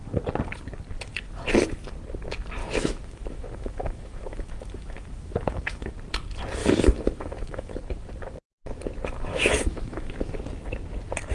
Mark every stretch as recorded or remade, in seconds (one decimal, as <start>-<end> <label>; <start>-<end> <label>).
0.0-2.6 recorded; 2.6-5.9 remade; 5.9-6.6 recorded; 6.6-7.8 remade; 7.8-9.3 recorded; 9.3-10.4 remade; 10.4-11.3 recorded